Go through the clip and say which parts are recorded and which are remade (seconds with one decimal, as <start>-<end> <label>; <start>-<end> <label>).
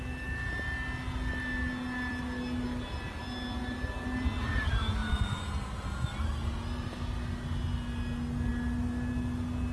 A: 0.0-4.4 recorded; 4.4-5.4 remade; 5.4-9.7 recorded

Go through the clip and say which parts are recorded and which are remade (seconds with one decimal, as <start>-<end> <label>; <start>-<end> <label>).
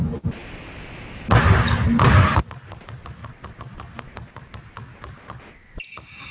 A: 0.0-6.3 recorded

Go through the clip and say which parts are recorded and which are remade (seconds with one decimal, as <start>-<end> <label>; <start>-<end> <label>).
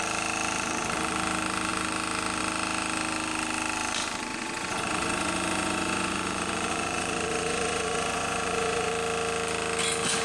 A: 0.0-4.3 recorded; 4.3-8.9 remade; 8.9-10.2 recorded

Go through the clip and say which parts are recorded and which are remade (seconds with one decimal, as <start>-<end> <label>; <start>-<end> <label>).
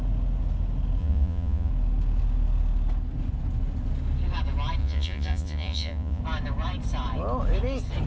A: 0.0-1.0 recorded; 1.0-1.7 remade; 1.7-4.8 recorded; 4.8-6.2 remade; 6.2-8.1 recorded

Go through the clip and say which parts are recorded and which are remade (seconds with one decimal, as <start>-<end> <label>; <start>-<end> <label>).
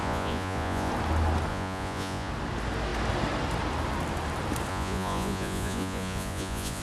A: 0.0-0.9 remade; 0.9-1.5 recorded; 1.5-2.3 remade; 2.3-4.7 recorded; 4.7-6.8 remade